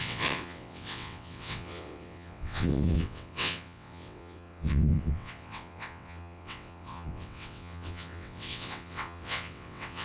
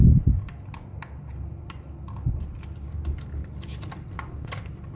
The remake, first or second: first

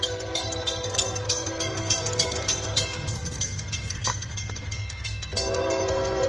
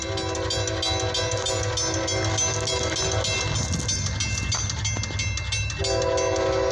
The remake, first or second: first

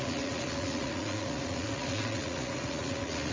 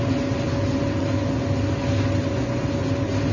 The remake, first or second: first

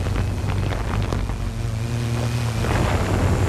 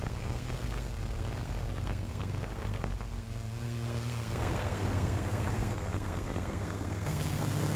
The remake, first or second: second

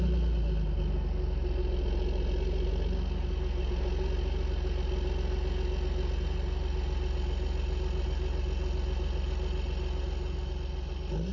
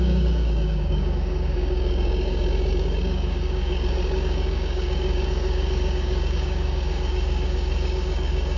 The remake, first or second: second